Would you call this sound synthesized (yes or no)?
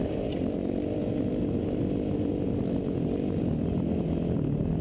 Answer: no